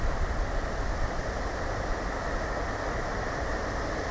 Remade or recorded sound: remade